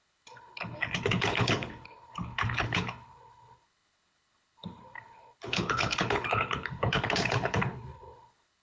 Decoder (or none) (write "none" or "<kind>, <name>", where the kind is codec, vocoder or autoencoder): codec, HILCodec